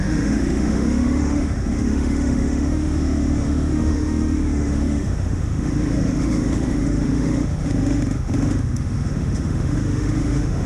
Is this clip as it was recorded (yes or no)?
no